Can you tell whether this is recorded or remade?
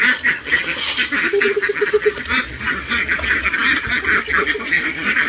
recorded